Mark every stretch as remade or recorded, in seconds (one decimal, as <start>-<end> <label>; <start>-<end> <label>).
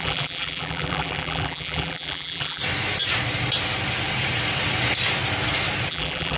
0.0-2.6 remade; 2.6-5.9 recorded; 5.9-6.4 remade